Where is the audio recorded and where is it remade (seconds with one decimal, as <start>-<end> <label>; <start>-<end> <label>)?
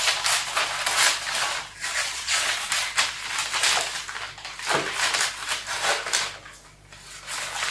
0.0-1.9 recorded; 1.9-2.7 remade; 2.7-7.7 recorded